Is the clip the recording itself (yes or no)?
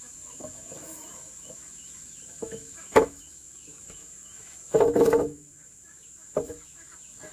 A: no